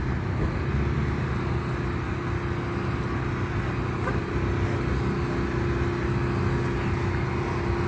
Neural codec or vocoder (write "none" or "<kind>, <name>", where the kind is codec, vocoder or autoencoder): none